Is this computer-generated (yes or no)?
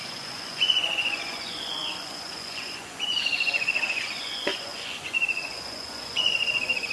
yes